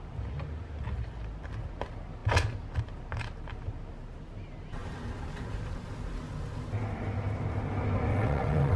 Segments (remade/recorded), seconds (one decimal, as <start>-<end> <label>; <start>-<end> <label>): 0.0-8.1 recorded; 8.1-8.8 remade